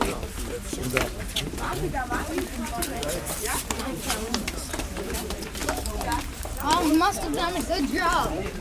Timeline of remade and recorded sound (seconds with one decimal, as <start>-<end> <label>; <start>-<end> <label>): 0.0-8.6 remade